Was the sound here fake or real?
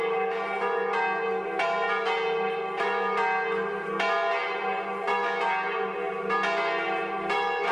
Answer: real